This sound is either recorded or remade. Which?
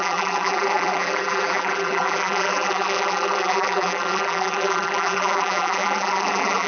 remade